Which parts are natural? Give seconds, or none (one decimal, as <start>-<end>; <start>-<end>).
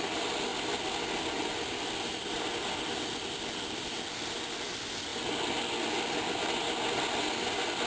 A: 0.0-7.9